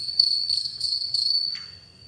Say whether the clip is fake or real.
fake